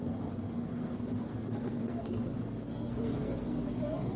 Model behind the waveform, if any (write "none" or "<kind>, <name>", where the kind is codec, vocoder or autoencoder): codec, SNAC